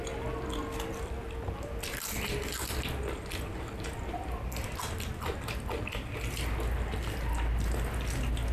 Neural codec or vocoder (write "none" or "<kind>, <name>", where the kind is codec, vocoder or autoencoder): none